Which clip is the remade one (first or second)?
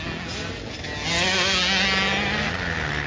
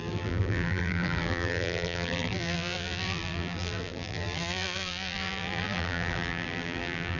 second